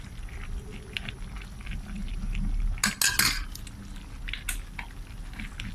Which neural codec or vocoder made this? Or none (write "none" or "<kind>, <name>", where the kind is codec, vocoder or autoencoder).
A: none